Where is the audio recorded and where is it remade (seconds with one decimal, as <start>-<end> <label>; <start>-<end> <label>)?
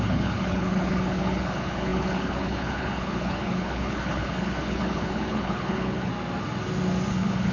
0.0-6.1 remade; 6.1-7.1 recorded; 7.1-7.5 remade